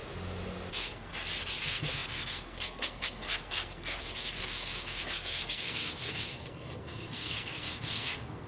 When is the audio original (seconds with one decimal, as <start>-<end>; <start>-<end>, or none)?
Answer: 0.0-0.7; 1.1-1.6